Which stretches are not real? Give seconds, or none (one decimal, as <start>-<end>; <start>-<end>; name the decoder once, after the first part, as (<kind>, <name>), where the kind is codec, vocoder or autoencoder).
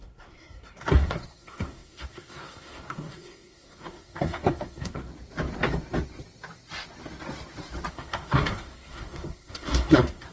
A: 0.0-5.1 (codec, SNAC); 7.9-10.3